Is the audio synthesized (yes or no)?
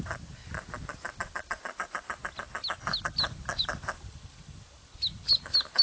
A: no